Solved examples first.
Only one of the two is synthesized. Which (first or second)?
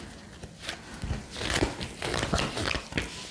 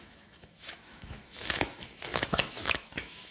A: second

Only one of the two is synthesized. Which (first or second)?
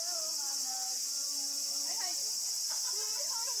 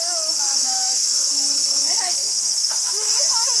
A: second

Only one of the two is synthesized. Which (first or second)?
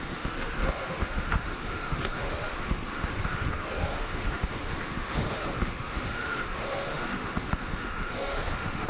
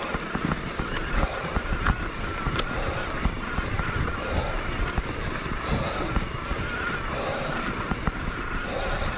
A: first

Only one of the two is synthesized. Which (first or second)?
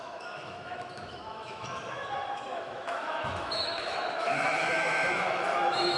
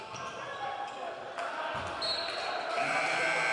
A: first